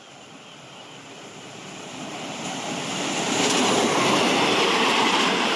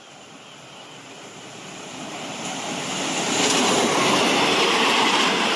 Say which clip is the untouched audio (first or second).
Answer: second